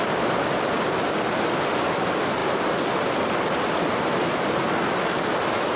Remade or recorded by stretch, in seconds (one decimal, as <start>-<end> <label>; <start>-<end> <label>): 0.0-5.8 recorded